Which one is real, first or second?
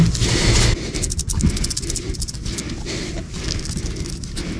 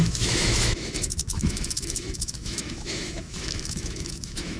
first